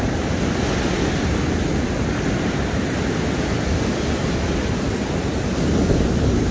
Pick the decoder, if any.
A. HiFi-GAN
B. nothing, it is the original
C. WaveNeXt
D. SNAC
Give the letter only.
B